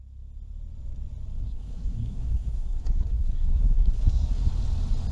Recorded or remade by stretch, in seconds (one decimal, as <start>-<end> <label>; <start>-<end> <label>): 0.0-1.4 recorded; 1.4-4.5 remade; 4.5-5.1 recorded